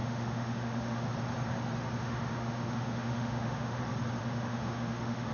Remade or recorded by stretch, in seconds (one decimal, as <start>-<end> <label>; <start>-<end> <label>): 0.0-1.1 remade; 1.1-2.0 recorded; 2.0-3.8 remade; 3.8-4.2 recorded; 4.2-5.3 remade